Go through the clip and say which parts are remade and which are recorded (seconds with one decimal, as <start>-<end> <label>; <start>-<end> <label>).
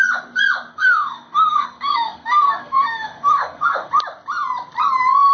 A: 0.0-0.7 recorded; 0.7-3.9 remade; 3.9-5.3 recorded